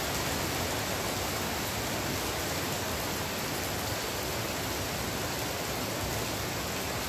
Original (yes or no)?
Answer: yes